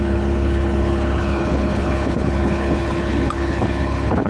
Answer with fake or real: fake